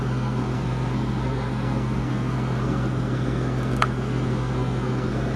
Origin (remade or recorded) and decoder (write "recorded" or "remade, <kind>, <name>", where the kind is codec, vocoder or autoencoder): remade, codec, SNAC